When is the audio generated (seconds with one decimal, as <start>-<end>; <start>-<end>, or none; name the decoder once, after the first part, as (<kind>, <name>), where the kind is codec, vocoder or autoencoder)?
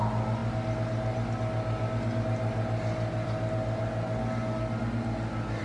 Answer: none